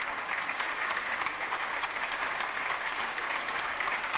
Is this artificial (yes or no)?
yes